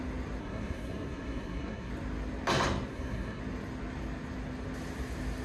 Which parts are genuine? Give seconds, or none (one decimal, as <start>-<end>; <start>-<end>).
0.0-0.4; 1.9-2.9; 3.4-5.4